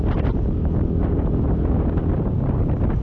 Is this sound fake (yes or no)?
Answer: no